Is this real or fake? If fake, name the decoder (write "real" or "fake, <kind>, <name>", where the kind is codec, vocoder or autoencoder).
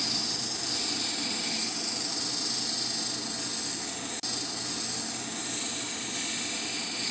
real